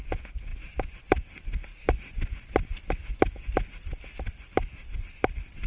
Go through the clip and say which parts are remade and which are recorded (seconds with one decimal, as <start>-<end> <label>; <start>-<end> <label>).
0.0-5.7 recorded